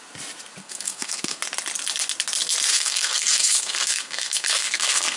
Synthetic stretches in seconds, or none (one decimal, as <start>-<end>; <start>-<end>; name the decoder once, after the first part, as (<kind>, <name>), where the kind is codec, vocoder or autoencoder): 0.6-1.4 (codec, SNAC); 2.7-5.2